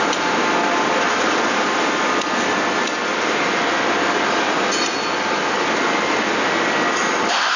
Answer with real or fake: real